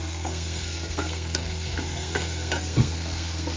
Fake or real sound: fake